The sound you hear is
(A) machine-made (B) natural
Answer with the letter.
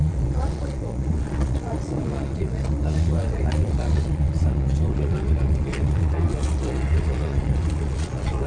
A